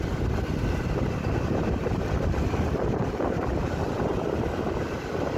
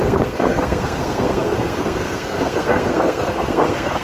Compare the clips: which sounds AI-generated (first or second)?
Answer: second